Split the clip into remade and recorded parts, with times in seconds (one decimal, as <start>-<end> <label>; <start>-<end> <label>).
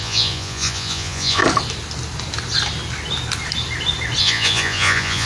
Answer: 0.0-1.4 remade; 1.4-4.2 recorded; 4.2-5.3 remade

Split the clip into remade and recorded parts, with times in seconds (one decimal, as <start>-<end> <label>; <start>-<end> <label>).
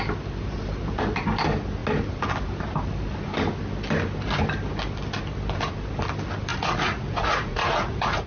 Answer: 0.0-6.5 recorded; 6.5-8.3 remade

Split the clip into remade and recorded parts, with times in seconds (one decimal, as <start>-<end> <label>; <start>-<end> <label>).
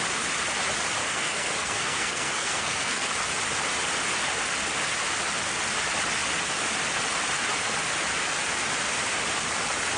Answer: 0.0-1.0 recorded; 1.0-3.1 remade; 3.1-10.0 recorded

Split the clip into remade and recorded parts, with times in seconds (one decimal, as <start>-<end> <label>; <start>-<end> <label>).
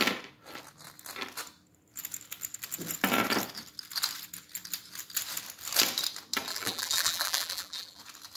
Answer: 0.0-6.5 recorded; 6.5-8.0 remade; 8.0-8.4 recorded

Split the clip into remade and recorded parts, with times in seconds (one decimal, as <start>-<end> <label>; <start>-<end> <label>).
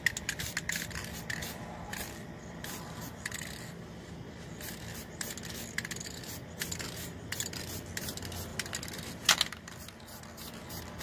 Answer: 0.0-11.0 recorded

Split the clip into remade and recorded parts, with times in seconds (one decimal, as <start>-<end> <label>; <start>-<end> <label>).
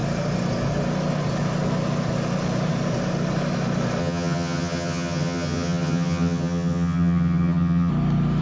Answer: 0.0-4.0 recorded; 4.0-7.9 remade; 7.9-8.4 recorded